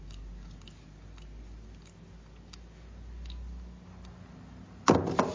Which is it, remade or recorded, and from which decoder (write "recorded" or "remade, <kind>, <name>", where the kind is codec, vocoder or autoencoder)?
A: recorded